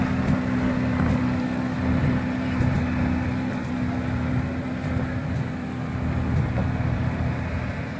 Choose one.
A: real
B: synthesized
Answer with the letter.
A